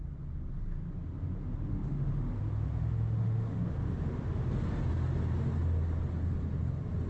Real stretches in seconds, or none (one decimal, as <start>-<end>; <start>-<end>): 0.0-1.7; 2.4-2.8; 4.5-7.1